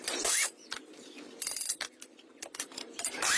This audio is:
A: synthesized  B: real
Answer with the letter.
A